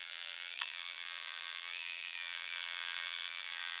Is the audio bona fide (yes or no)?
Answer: no